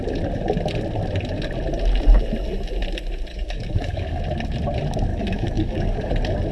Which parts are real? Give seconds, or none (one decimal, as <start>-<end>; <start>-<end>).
0.0-3.3; 4.2-5.1; 6.1-6.5